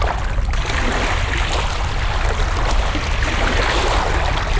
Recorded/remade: recorded